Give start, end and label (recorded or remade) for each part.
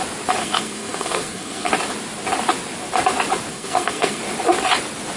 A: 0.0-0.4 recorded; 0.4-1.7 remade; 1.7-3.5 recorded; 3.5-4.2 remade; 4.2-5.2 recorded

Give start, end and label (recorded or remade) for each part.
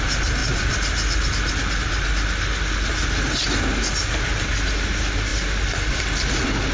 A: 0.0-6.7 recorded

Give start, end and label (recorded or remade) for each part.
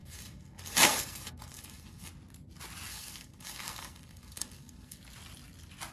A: 0.0-2.1 remade; 2.1-2.9 recorded; 2.9-5.0 remade; 5.0-5.9 recorded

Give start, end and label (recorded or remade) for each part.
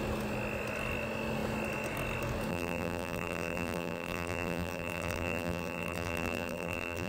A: 0.0-2.5 recorded; 2.5-7.1 remade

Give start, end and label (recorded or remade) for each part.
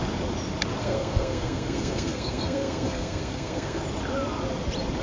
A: 0.0-0.8 recorded; 0.8-3.8 remade; 3.8-5.0 recorded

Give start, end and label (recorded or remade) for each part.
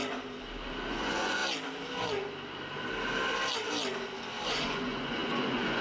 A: 0.0-0.9 recorded; 0.9-1.4 remade; 1.4-4.5 recorded; 4.5-5.8 remade